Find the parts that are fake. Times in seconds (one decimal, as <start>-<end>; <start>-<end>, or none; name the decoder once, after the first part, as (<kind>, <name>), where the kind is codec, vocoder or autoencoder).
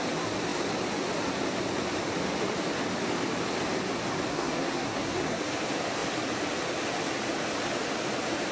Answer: 4.3-5.4 (codec, SNAC)